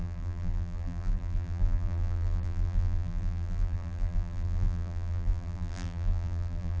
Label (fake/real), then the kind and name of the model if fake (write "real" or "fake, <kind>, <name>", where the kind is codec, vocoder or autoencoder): fake, vocoder, BigVGAN v2